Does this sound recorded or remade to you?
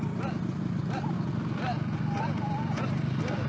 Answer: recorded